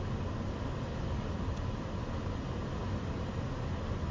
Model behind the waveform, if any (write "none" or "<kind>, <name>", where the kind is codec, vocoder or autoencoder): none